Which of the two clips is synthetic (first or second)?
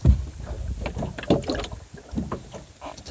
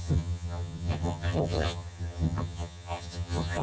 second